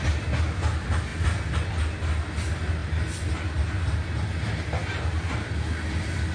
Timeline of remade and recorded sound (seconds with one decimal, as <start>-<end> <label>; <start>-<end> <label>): 0.0-6.3 recorded